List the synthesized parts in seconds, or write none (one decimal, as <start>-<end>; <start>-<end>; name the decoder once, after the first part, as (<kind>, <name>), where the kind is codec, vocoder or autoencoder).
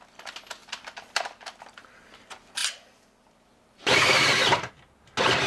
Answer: 0.6-1.5 (vocoder, BigVGAN v2); 2.6-4.7